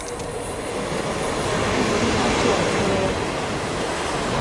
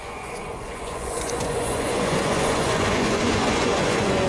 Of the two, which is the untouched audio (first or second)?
first